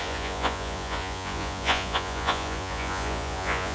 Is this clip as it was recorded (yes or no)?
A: no